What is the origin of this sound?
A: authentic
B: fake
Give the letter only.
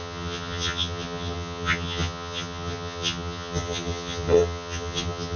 B